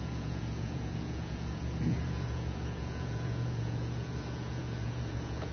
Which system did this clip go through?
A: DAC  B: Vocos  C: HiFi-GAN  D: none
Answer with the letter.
B